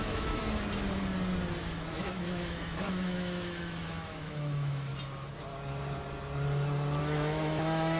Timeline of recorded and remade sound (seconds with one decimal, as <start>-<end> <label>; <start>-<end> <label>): 0.0-0.4 remade; 0.4-1.6 recorded; 1.6-4.9 remade; 4.9-7.0 recorded; 7.0-8.0 remade